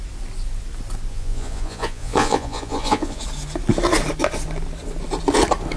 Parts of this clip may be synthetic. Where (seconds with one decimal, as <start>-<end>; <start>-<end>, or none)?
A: 1.1-3.2